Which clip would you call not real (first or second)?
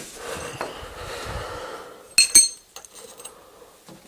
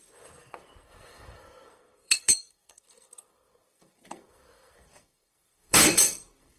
second